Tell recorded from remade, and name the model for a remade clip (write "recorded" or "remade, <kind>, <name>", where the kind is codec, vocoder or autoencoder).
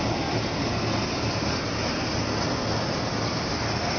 recorded